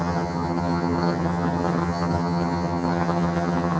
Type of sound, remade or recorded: remade